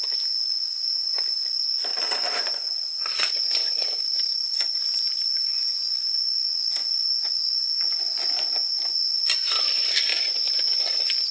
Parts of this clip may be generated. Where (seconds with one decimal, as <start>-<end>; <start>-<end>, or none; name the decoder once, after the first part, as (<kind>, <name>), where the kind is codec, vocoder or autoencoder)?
1.9-4.8 (vocoder, Vocos)